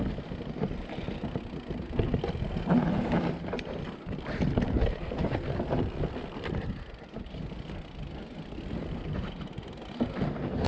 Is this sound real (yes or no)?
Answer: yes